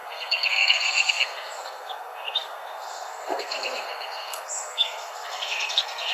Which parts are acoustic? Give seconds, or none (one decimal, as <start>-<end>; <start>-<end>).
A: none